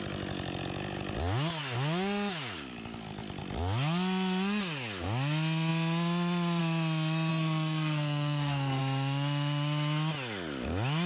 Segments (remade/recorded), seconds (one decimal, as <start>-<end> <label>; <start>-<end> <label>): 0.0-7.3 recorded; 7.3-8.8 remade; 8.8-11.1 recorded